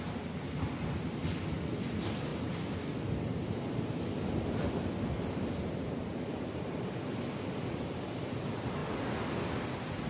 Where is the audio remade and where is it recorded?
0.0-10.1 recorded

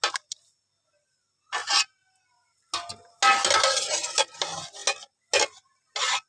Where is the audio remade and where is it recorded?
0.0-6.3 recorded

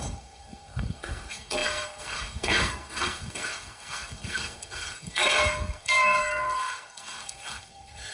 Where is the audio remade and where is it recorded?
0.0-8.1 remade

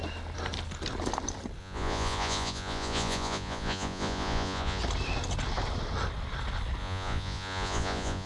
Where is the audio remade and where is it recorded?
0.0-1.6 recorded; 1.6-4.8 remade; 4.8-6.8 recorded; 6.8-8.3 remade